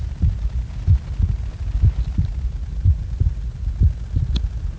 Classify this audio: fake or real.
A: real